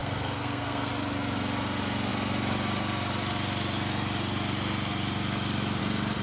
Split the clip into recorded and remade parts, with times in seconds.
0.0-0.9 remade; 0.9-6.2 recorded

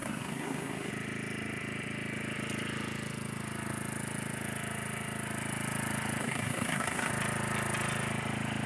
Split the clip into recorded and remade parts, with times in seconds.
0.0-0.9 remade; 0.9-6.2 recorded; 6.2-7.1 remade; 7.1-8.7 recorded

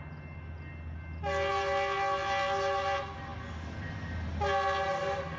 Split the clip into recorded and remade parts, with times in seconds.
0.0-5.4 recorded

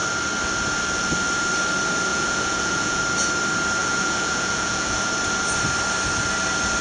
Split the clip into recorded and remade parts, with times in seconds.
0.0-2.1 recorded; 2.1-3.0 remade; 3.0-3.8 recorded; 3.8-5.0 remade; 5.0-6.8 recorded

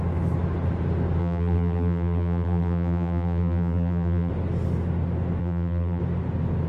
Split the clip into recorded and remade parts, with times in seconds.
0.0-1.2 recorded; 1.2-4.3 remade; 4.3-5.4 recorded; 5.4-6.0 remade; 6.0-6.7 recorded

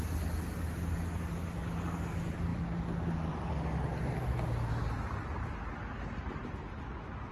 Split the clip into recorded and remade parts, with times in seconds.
0.0-7.3 recorded

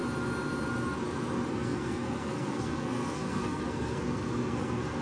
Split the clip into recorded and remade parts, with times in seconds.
0.0-1.5 recorded; 1.5-5.0 remade